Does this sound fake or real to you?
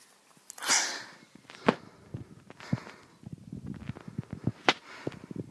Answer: real